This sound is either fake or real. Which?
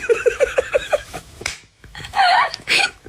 fake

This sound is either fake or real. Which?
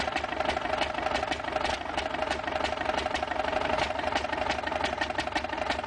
real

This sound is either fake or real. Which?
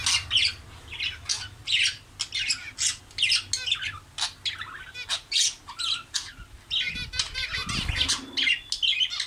real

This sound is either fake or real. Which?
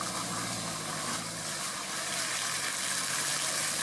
real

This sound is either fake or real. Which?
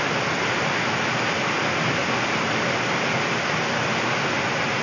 real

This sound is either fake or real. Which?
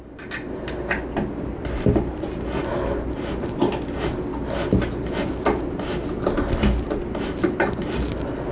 real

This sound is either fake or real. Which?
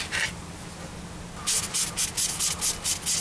real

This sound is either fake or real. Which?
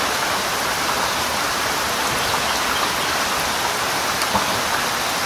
real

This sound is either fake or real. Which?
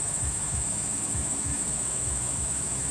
fake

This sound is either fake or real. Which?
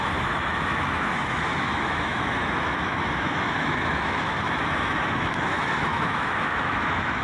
fake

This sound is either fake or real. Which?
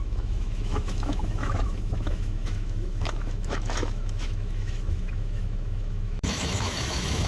fake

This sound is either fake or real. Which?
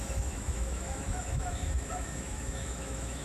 fake